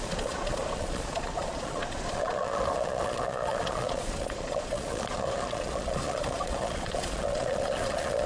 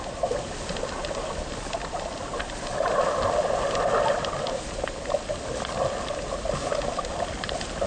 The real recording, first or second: second